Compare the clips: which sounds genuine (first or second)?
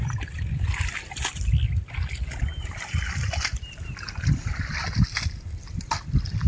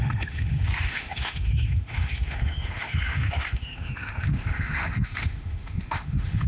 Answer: first